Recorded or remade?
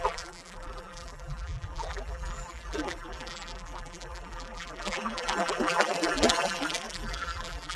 remade